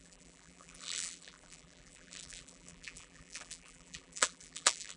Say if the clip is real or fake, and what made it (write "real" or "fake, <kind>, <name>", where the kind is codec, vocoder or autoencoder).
fake, vocoder, BigVGAN v2